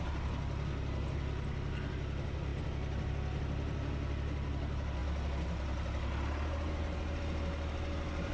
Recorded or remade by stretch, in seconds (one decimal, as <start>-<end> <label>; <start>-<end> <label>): 0.0-8.3 recorded